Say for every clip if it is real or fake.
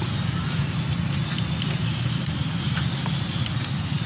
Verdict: real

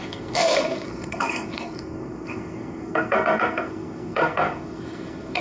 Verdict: fake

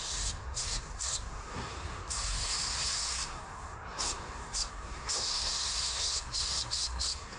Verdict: fake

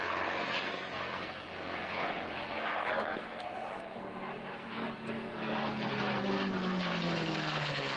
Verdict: fake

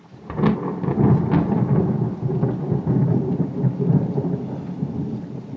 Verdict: real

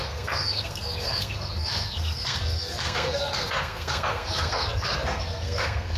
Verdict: fake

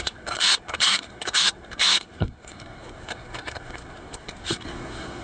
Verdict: fake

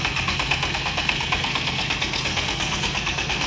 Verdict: fake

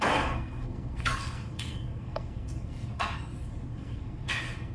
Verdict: fake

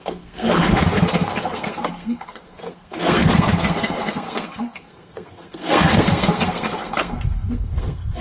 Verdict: fake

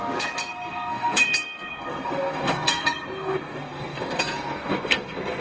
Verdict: fake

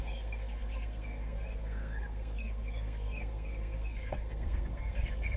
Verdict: fake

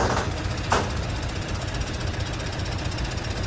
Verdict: real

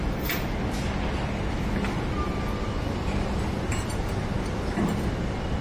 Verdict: real